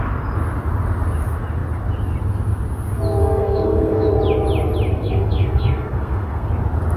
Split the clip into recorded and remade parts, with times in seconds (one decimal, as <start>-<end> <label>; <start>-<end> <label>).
0.0-3.2 recorded; 3.2-4.1 remade; 4.1-4.9 recorded; 4.9-6.5 remade; 6.5-7.0 recorded